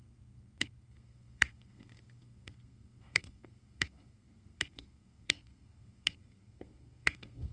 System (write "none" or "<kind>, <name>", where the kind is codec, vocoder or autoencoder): codec, SNAC